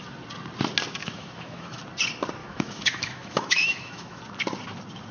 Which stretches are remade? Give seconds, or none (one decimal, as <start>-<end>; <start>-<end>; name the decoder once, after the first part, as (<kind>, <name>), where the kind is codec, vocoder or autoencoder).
1.0-1.8 (autoencoder, DAC-VAE); 2.4-4.2